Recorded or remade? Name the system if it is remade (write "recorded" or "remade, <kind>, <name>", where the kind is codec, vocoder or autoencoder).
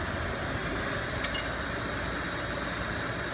recorded